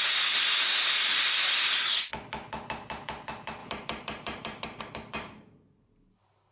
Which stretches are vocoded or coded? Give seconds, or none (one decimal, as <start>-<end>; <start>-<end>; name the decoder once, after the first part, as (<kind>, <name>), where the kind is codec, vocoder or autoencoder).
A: 3.6-4.8 (vocoder, BigVGAN v2)